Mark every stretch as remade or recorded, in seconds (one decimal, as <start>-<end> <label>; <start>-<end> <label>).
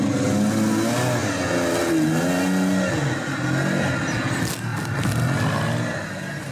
0.0-6.5 recorded